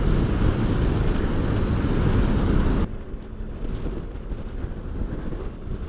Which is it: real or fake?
real